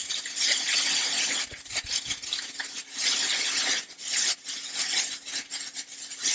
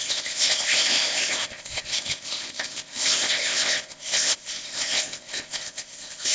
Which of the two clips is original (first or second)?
first